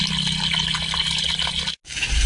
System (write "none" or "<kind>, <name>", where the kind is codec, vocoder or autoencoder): none